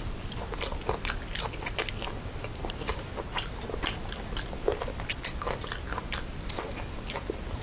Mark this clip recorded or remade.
recorded